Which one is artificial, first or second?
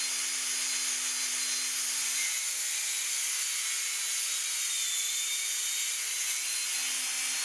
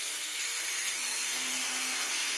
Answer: second